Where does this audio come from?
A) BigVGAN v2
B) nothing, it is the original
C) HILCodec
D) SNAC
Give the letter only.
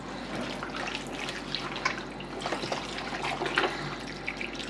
B